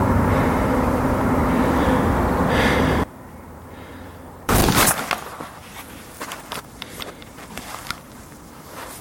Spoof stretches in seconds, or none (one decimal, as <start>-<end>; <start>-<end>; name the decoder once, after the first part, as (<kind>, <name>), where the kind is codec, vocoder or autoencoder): 0.0-1.4 (vocoder, BigVGAN v2); 2.6-4.6; 6.4-9.0